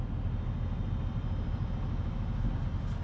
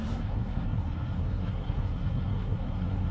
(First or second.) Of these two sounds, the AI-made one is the second